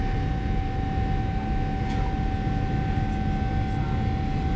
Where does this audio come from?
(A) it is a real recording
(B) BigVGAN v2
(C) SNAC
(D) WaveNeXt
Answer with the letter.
A